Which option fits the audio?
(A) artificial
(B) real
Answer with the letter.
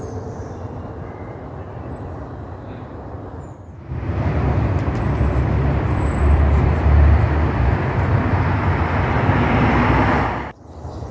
A